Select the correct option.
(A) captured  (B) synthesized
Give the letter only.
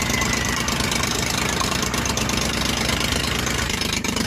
B